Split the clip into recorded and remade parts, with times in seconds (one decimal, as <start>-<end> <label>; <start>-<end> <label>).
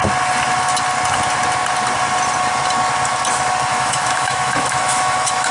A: 0.0-3.7 recorded; 3.7-5.5 remade